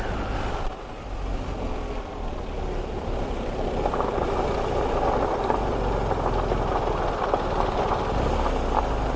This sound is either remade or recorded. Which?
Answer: recorded